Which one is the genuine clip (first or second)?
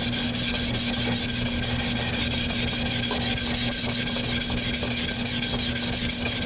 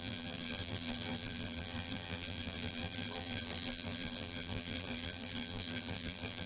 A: first